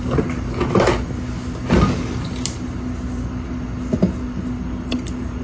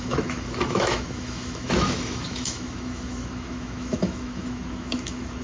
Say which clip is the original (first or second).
first